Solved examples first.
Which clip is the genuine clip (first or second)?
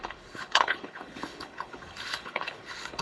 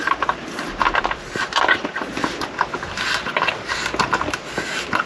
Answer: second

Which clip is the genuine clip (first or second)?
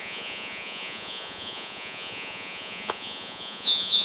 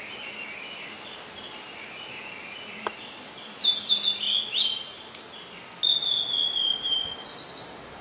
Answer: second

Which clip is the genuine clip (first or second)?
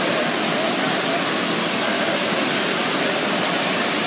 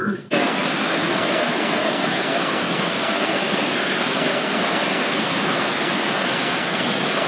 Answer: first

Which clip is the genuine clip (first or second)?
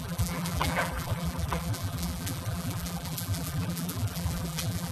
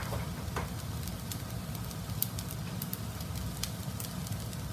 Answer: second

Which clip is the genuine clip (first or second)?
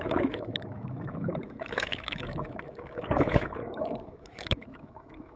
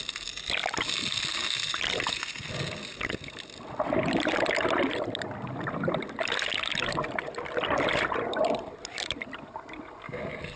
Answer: second